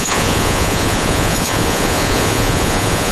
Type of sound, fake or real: fake